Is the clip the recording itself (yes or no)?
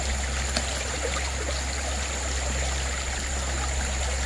yes